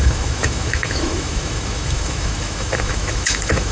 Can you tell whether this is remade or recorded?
remade